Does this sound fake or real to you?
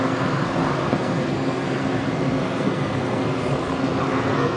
fake